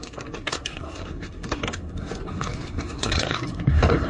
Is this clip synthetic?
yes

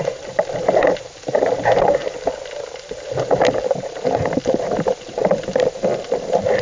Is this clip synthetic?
no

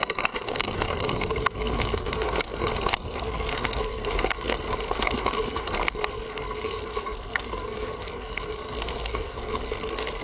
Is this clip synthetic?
yes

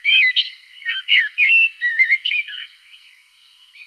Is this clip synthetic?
yes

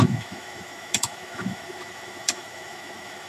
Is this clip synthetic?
yes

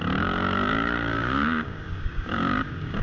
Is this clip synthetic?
yes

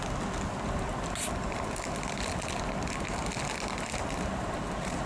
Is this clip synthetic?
no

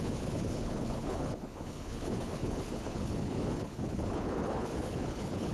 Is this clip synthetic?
yes